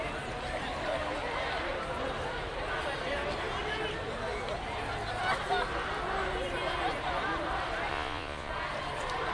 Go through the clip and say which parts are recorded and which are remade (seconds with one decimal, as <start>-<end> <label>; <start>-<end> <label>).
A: 0.0-7.9 recorded; 7.9-8.5 remade; 8.5-9.3 recorded

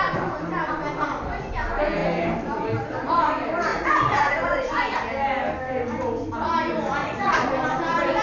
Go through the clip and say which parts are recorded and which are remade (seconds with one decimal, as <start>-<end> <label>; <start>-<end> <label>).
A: 0.0-3.7 recorded; 3.7-4.6 remade; 4.6-7.0 recorded; 7.0-7.5 remade; 7.5-8.2 recorded